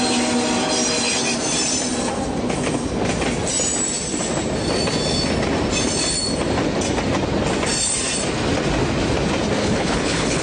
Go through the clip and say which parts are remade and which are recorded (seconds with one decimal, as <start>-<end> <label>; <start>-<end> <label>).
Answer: 0.0-9.6 recorded; 9.6-10.4 remade